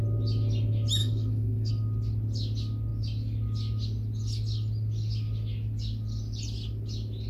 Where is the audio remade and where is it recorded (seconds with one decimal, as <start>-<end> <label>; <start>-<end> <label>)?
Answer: 0.0-1.0 recorded; 1.0-1.7 remade; 1.7-7.3 recorded